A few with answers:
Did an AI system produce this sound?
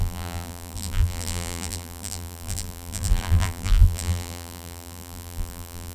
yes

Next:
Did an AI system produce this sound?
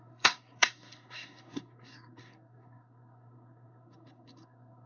yes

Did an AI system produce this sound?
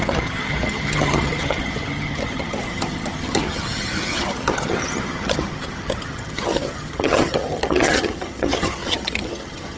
yes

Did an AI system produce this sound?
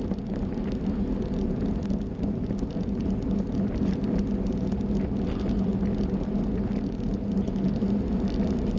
no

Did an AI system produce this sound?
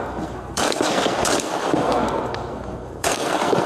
yes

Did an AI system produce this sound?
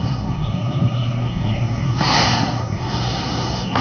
yes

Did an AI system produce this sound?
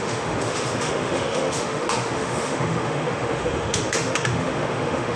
yes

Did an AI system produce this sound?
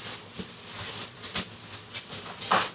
no